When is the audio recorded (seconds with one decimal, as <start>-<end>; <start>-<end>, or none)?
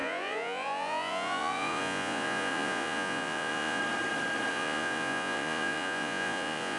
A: 3.8-4.5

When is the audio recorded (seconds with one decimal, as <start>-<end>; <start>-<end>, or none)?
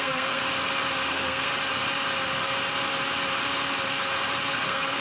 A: 0.4-1.1; 1.5-4.5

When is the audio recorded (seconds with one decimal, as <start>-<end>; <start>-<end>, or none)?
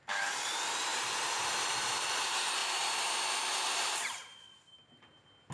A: 0.0-5.5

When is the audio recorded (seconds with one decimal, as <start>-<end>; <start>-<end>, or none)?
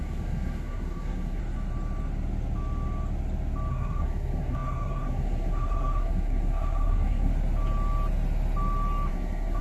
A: 1.4-3.7; 7.3-9.1